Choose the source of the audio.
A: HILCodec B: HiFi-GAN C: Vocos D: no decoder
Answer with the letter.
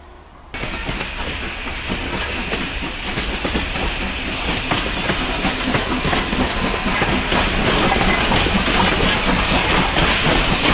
D